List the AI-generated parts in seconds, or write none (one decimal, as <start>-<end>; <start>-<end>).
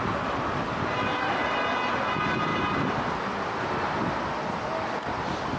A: none